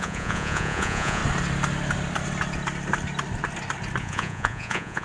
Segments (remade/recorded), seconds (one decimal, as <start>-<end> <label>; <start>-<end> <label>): 0.0-1.2 remade; 1.2-4.0 recorded; 4.0-5.0 remade